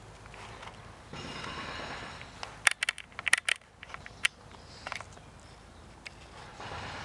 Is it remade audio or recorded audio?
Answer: recorded